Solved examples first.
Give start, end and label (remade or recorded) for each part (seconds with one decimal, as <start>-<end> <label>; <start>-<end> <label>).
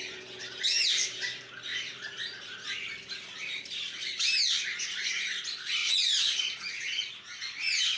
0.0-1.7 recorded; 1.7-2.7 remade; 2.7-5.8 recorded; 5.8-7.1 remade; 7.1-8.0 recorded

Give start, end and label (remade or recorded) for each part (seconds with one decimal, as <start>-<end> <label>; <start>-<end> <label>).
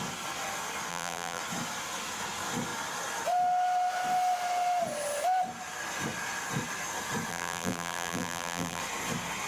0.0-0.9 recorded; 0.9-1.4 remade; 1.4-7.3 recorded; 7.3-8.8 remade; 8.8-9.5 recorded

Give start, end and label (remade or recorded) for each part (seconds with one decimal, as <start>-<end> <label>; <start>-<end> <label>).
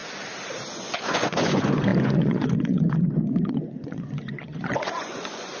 0.0-0.7 recorded; 0.7-5.6 remade